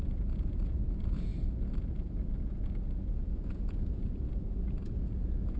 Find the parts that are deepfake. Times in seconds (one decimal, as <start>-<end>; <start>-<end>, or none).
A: 0.0-1.3; 2.3-5.6